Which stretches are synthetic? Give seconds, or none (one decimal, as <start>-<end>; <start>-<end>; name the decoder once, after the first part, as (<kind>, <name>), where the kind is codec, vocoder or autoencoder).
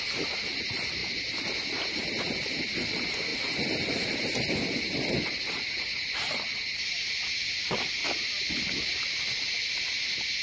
none